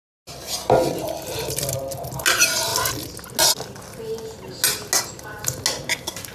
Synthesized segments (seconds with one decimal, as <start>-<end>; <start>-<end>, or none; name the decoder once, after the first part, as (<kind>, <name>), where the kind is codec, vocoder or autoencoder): none